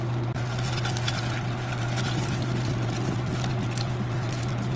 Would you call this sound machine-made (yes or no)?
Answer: no